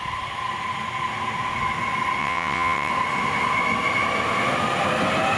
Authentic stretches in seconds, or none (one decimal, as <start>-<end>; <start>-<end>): 0.0-2.2; 2.9-5.4